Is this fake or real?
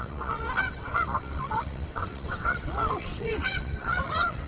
fake